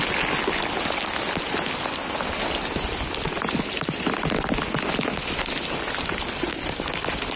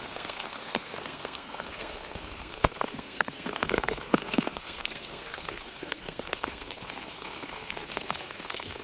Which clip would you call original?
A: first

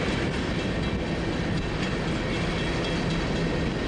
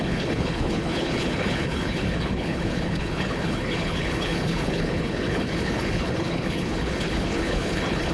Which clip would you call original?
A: first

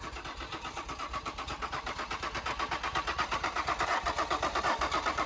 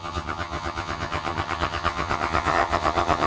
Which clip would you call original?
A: first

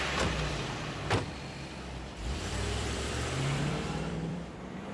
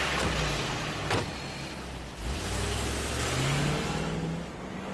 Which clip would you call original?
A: second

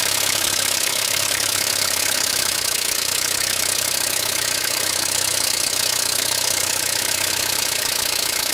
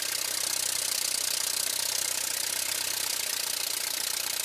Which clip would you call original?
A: second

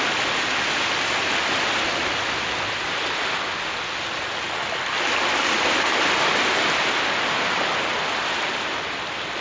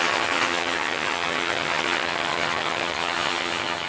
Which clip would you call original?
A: first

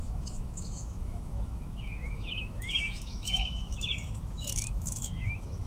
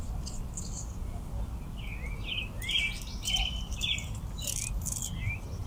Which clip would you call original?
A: second